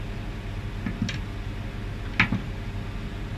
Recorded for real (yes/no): yes